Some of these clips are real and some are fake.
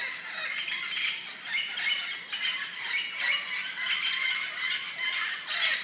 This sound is real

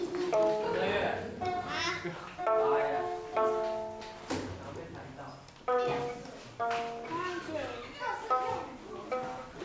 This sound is real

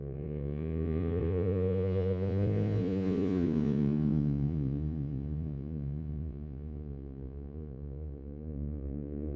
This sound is fake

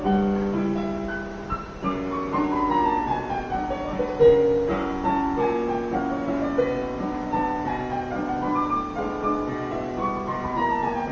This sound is real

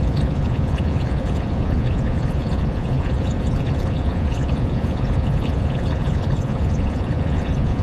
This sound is fake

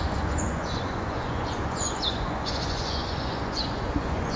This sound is fake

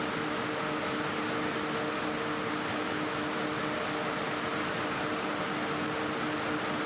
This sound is real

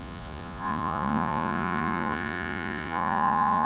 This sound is fake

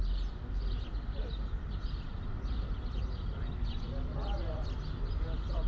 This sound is real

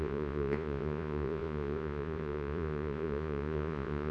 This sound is fake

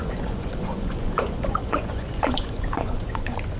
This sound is fake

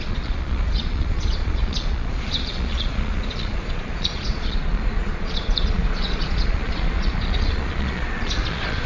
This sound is fake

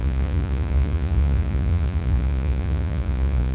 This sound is fake